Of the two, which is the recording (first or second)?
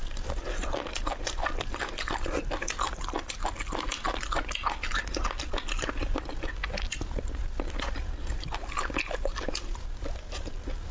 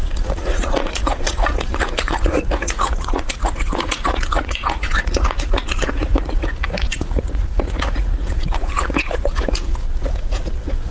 first